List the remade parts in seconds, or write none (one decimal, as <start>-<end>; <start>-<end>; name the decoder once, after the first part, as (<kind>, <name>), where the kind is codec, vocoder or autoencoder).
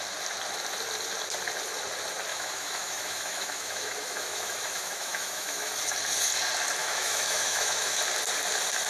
2.3-5.7 (autoencoder, DAC-VAE); 6.8-8.0